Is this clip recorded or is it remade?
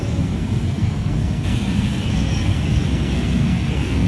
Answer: remade